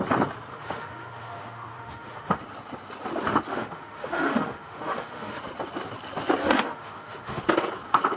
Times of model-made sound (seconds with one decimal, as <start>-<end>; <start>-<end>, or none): 0.5-2.4; 3.5-5.4; 6.4-7.4